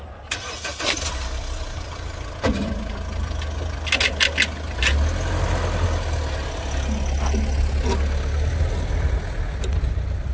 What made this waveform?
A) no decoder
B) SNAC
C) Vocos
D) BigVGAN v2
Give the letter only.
A